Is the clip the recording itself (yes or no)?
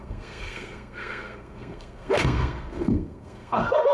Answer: no